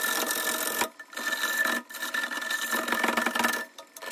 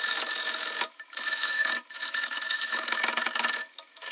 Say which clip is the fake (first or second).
second